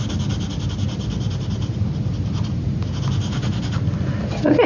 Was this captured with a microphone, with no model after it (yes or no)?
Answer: yes